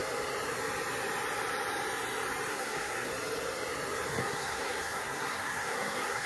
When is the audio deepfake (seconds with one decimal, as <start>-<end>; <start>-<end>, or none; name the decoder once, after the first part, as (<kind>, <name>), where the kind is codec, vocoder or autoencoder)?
2.5-3.1 (codec, SNAC); 4.2-6.3